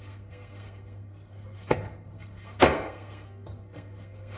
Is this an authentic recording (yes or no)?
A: no